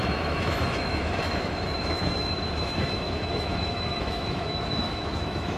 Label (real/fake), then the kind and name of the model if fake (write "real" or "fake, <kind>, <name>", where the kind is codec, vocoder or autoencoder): fake, autoencoder, DAC-VAE